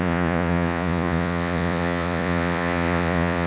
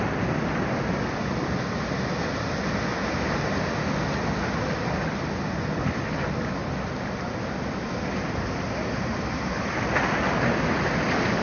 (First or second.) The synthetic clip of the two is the first